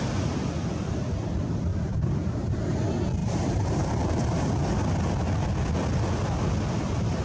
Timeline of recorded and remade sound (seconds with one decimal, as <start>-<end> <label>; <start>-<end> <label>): 0.0-1.7 recorded; 1.7-2.6 remade; 2.6-3.2 recorded; 3.2-4.5 remade; 4.5-7.2 recorded